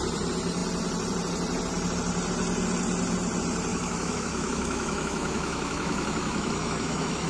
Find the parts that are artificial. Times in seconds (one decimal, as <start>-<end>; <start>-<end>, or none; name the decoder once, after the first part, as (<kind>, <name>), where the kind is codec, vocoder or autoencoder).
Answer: 3.7-7.3 (autoencoder, DAC-VAE)